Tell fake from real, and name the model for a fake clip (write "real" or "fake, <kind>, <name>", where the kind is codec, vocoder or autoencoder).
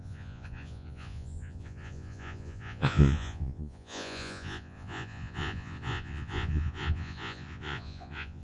fake, vocoder, Vocos